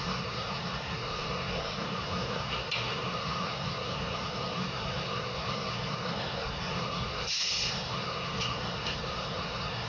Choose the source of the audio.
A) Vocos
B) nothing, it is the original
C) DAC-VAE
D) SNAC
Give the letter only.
D